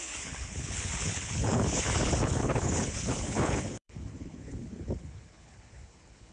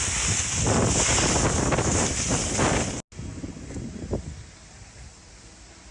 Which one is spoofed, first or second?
first